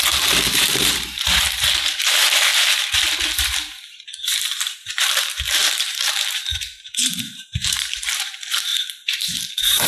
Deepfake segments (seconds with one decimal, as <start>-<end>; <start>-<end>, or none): 0.0-9.9